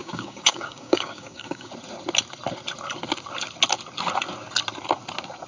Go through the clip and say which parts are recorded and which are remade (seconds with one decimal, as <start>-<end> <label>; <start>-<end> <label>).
0.0-1.7 remade; 1.7-5.5 recorded